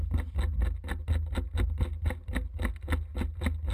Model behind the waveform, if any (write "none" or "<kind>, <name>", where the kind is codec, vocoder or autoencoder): none